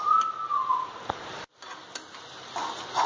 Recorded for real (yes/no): yes